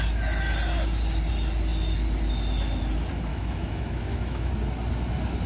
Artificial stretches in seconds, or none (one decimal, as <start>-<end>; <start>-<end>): 3.3-4.5